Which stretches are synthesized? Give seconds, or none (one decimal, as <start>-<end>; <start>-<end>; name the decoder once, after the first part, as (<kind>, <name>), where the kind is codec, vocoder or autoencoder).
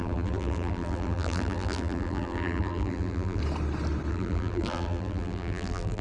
0.0-3.4 (vocoder, BigVGAN v2); 4.1-6.0